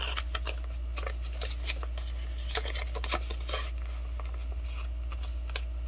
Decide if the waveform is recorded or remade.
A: recorded